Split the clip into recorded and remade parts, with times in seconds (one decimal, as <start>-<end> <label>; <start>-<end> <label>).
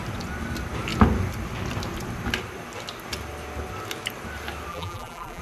0.0-4.7 recorded; 4.7-5.4 remade